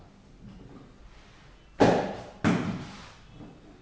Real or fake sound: real